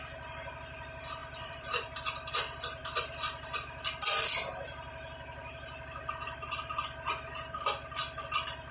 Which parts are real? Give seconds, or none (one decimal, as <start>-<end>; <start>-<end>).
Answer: 0.0-1.2; 2.3-8.7